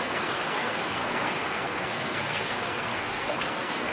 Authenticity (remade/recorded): remade